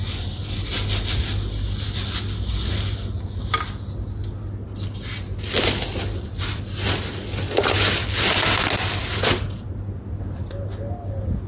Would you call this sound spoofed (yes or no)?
no